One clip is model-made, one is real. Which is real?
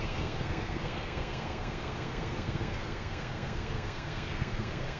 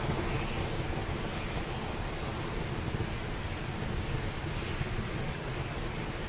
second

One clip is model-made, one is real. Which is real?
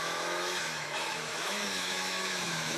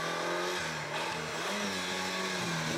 second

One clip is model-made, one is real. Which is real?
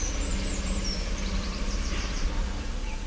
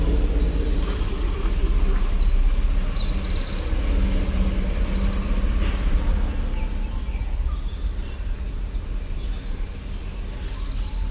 second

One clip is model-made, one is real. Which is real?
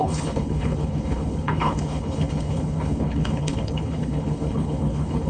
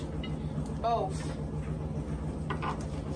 second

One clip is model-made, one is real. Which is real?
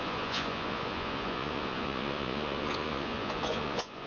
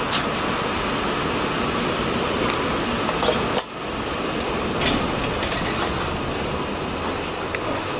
second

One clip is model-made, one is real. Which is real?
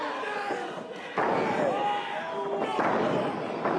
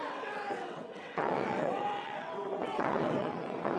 first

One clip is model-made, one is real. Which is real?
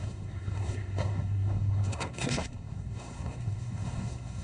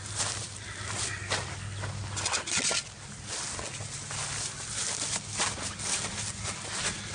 second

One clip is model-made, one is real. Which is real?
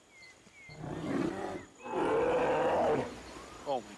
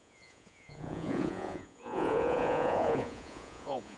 first